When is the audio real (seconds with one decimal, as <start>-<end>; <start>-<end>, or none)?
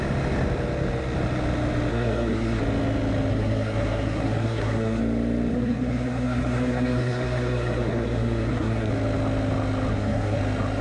0.0-1.9; 2.6-3.3; 5.0-5.5; 8.9-9.9; 10.4-10.8